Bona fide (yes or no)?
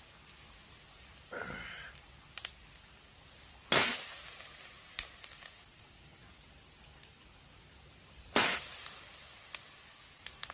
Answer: yes